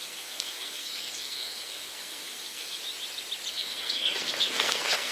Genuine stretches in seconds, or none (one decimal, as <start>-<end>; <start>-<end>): 2.8-3.5